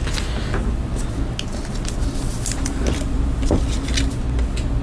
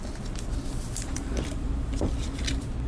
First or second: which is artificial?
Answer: second